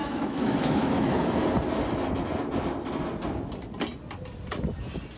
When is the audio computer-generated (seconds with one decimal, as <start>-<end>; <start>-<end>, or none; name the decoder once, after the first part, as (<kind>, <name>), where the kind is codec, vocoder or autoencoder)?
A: 0.0-1.2 (autoencoder, DAC-VAE)